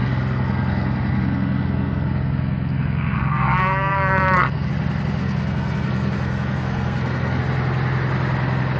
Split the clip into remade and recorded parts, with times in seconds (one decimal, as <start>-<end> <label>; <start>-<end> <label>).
0.0-4.7 remade; 4.7-5.2 recorded; 5.2-7.4 remade; 7.4-8.8 recorded